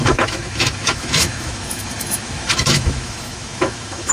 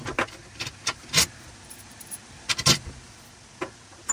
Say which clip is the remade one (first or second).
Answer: first